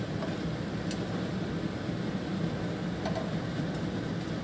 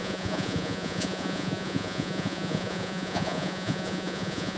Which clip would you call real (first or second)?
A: first